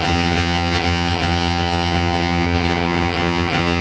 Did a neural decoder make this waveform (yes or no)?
yes